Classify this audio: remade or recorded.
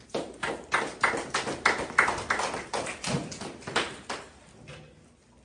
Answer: recorded